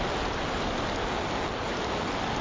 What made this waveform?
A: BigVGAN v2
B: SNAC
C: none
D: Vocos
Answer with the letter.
C